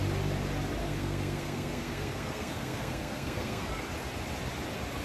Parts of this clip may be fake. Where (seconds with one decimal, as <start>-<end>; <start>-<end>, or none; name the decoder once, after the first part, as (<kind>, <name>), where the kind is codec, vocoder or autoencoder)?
0.8-3.8 (codec, SNAC)